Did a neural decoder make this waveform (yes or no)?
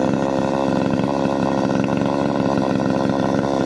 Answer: yes